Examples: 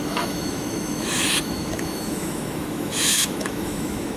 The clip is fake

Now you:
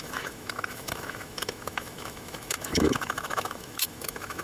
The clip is fake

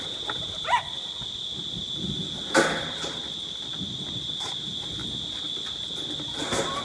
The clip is real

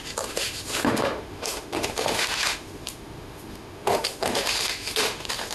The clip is fake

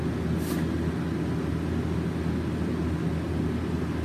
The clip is real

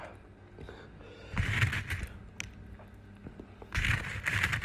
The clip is real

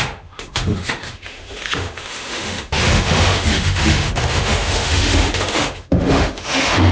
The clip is fake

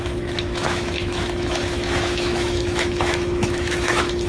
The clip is fake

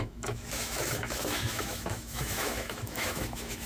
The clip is fake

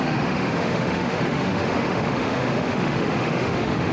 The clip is fake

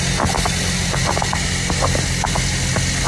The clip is real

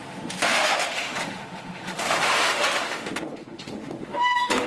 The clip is fake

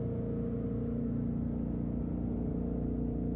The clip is real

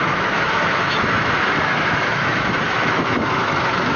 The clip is fake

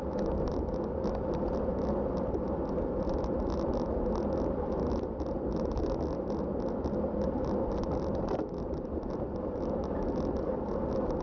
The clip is real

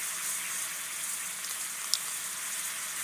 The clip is real